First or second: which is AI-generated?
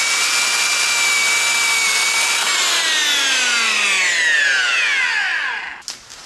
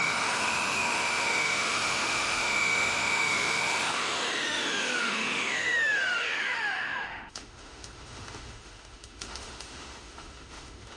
second